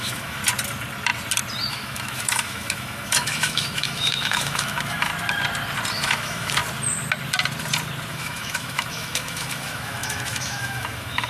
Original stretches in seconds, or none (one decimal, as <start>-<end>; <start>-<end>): 0.4-1.7; 5.1-5.9; 6.6-8.1